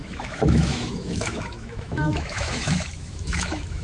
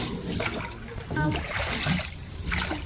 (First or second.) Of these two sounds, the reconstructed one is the first